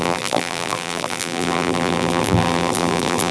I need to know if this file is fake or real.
fake